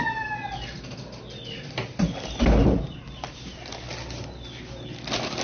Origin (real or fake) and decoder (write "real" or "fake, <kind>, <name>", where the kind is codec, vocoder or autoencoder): real